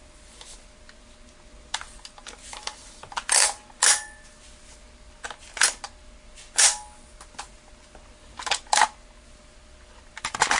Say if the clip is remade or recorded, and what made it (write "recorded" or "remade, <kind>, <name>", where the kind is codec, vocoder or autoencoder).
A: recorded